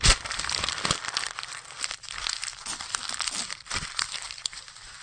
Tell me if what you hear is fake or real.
fake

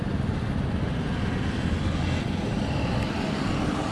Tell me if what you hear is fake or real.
real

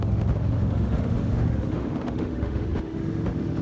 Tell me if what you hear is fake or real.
fake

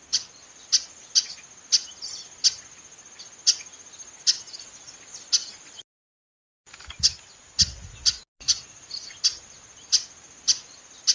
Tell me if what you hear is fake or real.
real